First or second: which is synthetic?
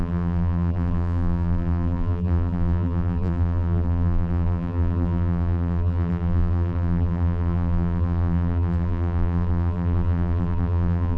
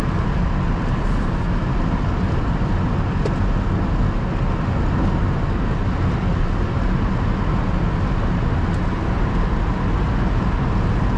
first